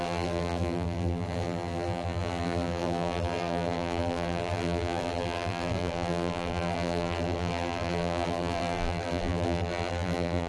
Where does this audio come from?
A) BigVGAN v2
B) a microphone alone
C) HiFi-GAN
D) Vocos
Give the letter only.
A